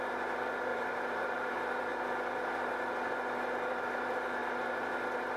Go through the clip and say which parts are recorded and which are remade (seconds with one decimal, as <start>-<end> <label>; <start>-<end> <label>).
0.0-0.7 recorded; 0.7-1.5 remade; 1.5-4.4 recorded; 4.4-4.9 remade; 4.9-5.4 recorded